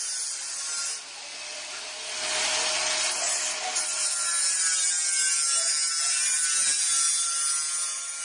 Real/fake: real